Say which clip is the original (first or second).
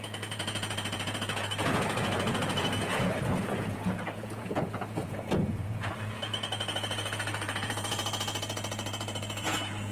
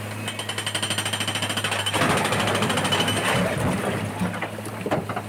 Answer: second